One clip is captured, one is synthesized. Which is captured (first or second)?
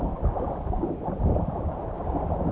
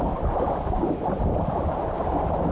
second